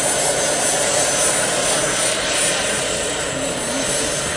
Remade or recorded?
recorded